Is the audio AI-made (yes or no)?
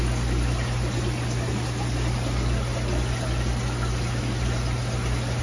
no